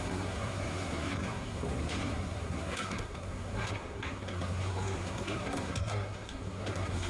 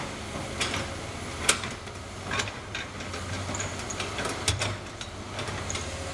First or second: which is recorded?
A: second